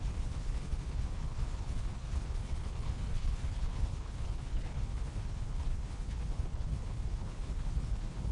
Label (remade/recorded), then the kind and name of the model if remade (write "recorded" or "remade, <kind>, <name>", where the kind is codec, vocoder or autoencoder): remade, codec, HILCodec